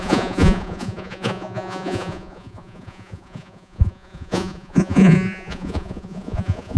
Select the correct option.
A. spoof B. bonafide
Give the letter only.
A